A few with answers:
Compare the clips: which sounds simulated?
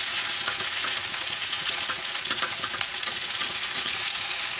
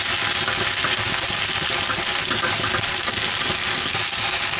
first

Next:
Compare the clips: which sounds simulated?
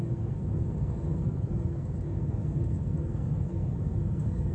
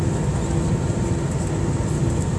first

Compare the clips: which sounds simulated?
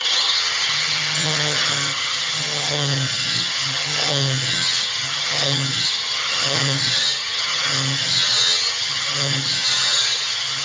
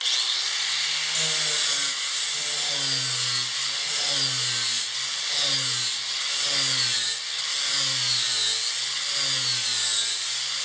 first